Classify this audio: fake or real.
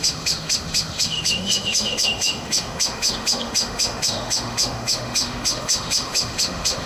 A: fake